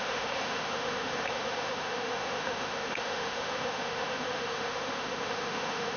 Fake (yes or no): yes